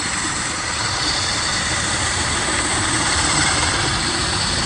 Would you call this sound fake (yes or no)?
yes